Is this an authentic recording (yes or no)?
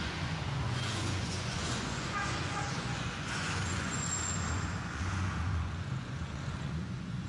no